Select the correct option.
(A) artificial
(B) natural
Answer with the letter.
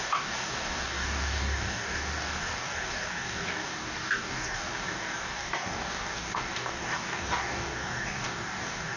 A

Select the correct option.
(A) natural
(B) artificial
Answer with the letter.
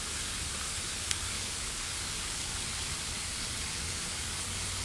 B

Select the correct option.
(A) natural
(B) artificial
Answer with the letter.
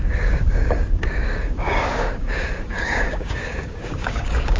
B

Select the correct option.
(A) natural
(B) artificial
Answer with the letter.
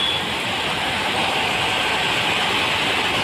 A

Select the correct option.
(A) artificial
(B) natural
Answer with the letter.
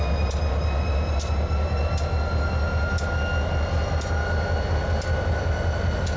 B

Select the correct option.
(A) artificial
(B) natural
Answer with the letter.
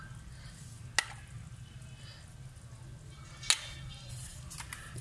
B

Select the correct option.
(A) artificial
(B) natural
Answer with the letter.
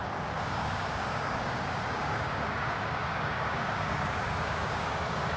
A